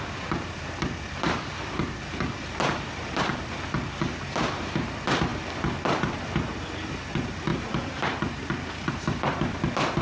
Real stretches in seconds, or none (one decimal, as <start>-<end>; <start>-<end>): 5.3-6.1; 7.5-8.9